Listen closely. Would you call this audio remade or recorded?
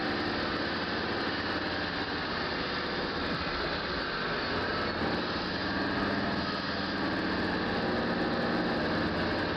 recorded